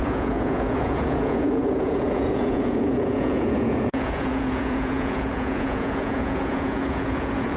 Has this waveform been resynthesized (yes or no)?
yes